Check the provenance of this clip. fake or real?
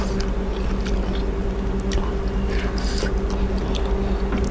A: real